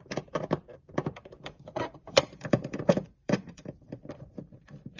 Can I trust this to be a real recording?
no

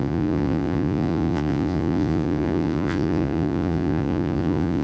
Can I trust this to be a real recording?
no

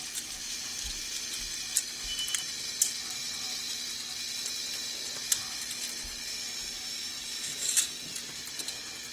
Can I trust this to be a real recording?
yes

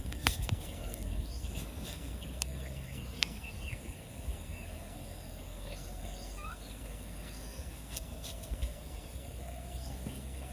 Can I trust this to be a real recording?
no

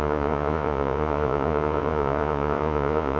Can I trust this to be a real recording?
no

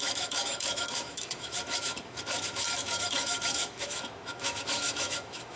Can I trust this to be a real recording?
no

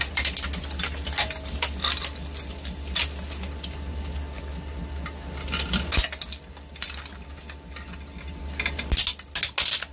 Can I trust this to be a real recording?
yes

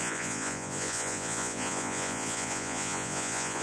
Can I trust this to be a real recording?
no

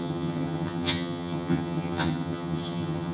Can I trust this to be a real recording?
no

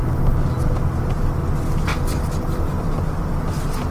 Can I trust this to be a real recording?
yes